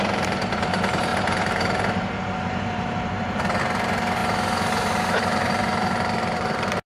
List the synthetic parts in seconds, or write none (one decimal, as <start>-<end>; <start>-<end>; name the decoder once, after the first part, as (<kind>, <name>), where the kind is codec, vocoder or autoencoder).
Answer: 0.0-4.2 (vocoder, BigVGAN v2); 4.7-6.9